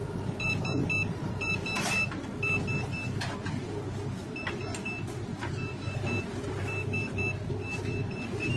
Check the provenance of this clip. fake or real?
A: real